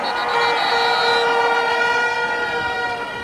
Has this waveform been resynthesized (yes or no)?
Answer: no